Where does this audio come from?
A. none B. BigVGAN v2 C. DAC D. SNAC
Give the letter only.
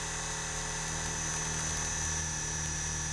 A